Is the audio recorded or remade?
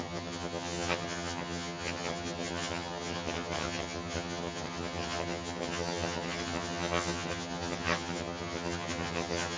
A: remade